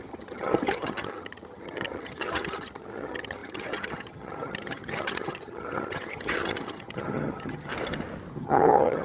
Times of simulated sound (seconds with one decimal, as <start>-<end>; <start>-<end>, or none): 0.0-7.7; 8.3-9.0